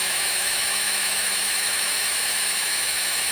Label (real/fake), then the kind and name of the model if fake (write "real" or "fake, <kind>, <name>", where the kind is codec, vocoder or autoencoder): fake, autoencoder, DAC-VAE